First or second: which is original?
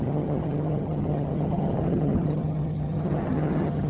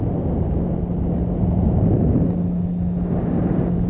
second